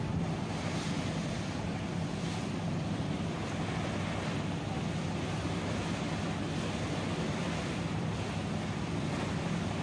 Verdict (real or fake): real